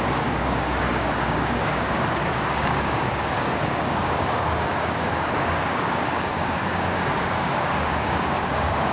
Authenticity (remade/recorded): remade